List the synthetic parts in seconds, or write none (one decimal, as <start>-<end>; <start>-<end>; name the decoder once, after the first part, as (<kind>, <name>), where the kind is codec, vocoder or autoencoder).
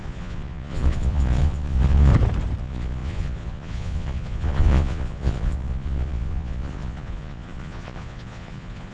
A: 0.0-2.1 (vocoder, Vocos); 2.6-8.9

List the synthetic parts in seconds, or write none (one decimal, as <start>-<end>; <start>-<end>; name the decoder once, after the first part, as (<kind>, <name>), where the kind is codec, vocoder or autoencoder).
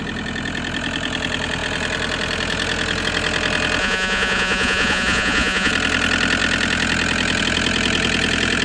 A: 3.8-5.7 (vocoder, Vocos)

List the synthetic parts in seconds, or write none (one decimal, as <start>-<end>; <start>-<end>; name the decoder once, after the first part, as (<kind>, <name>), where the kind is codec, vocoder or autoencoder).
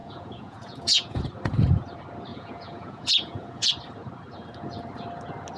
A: 0.0-1.2 (vocoder, Vocos); 2.3-3.7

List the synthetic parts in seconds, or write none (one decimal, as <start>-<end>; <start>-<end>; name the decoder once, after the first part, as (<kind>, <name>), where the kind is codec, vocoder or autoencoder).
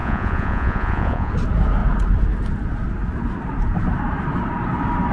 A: 0.0-1.3 (vocoder, Vocos)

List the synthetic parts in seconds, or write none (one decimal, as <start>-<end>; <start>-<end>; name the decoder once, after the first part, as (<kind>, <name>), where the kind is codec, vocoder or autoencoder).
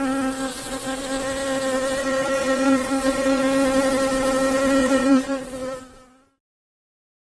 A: 0.5-1.0 (vocoder, Vocos); 2.0-3.4; 4.8-5.8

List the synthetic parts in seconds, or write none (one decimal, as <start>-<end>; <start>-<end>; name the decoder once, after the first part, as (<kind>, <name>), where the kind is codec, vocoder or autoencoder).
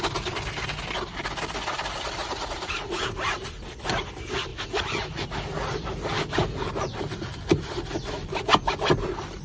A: 2.2-3.0 (vocoder, Vocos)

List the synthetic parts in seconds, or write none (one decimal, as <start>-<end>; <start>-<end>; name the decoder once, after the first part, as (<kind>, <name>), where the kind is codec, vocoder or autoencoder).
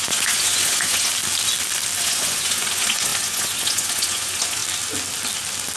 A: 0.0-1.1 (vocoder, Vocos); 2.0-4.6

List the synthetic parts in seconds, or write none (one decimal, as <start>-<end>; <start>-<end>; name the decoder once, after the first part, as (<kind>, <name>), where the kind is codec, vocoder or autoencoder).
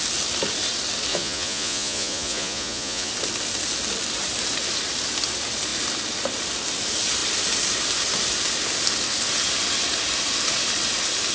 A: 1.1-3.1 (vocoder, Vocos)